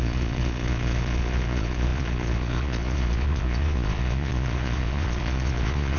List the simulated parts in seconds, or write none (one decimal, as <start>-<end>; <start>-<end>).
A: 0.0-6.0